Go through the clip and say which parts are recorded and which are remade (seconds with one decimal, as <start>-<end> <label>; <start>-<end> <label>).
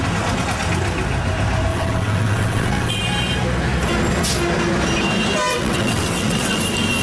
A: 0.0-1.7 recorded; 1.7-3.0 remade; 3.0-5.5 recorded; 5.5-6.6 remade; 6.6-7.0 recorded